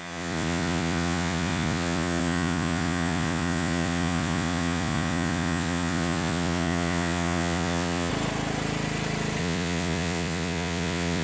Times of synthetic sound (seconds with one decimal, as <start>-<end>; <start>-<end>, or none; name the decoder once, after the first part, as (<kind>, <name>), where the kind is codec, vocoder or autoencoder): 0.0-8.1 (vocoder, Vocos); 9.4-11.2